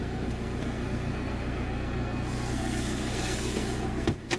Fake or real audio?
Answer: fake